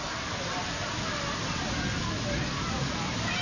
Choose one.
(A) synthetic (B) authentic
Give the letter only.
B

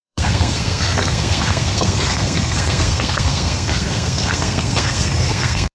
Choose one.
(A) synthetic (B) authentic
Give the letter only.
A